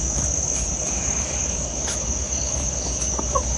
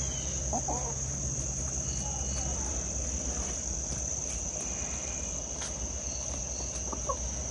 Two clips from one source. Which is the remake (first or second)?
first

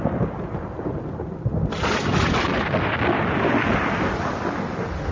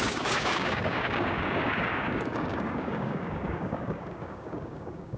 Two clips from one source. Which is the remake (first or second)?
second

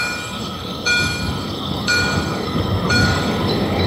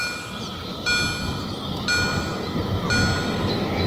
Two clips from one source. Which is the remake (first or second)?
first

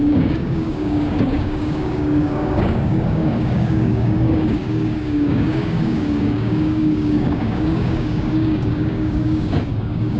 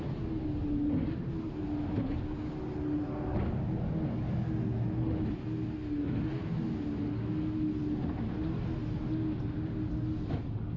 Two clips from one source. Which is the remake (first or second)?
first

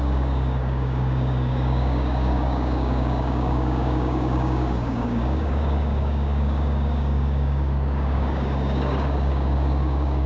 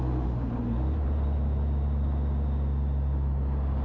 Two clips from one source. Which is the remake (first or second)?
first